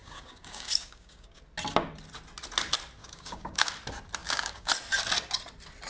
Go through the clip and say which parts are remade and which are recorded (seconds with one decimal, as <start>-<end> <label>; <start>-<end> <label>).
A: 0.0-1.4 remade; 1.4-3.0 recorded; 3.0-3.7 remade; 3.7-4.2 recorded; 4.2-4.7 remade; 4.7-5.9 recorded